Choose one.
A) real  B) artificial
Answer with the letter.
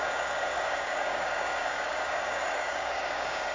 B